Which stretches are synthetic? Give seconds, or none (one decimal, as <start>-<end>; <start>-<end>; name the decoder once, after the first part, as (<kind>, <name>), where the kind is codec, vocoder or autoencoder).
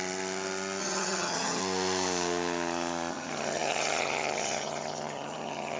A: 0.8-1.6 (vocoder, HiFi-GAN); 3.1-5.8